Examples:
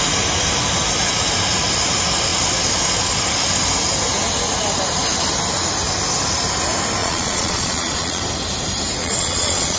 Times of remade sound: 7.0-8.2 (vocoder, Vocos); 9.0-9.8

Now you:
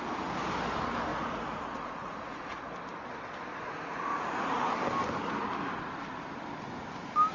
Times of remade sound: 1.1-2.6 (vocoder, Vocos); 3.5-4.7

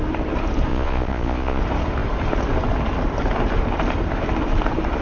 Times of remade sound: 0.7-1.6 (vocoder, Vocos)

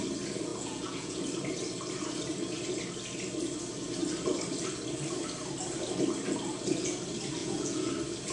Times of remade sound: 0.5-1.2 (vocoder, Vocos); 7.4-7.9

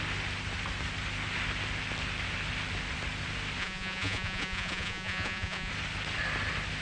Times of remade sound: 3.6-5.7 (vocoder, Vocos)

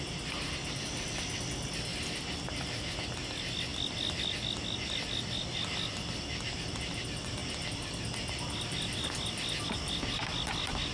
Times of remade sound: none